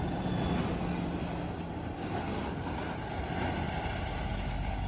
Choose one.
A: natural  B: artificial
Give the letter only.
A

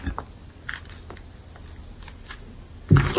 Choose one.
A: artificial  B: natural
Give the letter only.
B